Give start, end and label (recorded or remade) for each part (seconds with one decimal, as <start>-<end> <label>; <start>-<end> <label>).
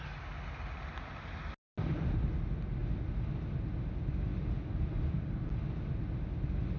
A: 0.0-6.8 recorded